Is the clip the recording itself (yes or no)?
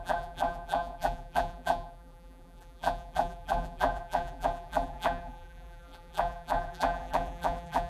no